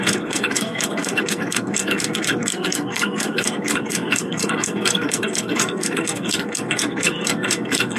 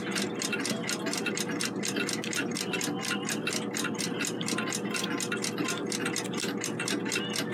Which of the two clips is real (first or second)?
second